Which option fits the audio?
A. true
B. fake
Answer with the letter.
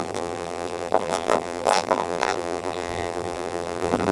B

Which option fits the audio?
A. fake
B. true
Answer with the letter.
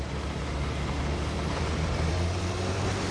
A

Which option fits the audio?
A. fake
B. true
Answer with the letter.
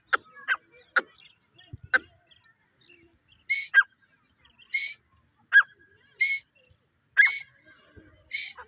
B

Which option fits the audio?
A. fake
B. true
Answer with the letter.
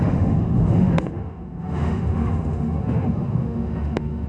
A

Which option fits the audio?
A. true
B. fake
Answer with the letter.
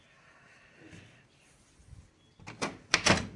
A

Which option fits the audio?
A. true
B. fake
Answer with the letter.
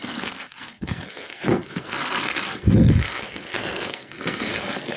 B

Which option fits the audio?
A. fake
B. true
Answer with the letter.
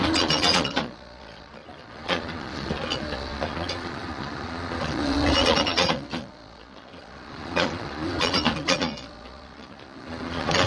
A